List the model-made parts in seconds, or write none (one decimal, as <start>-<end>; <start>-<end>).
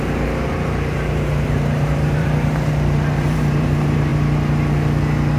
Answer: 0.0-4.1